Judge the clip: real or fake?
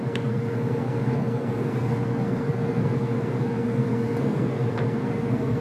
fake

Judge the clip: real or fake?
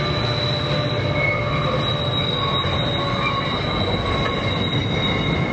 real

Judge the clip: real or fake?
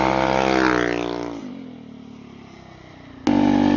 real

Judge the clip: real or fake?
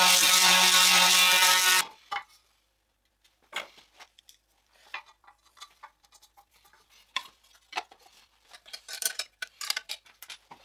fake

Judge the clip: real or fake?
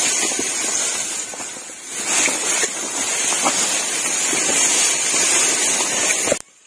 real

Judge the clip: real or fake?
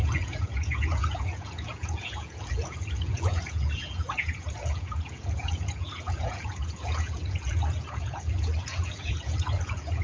fake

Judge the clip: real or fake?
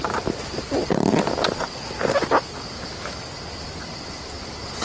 real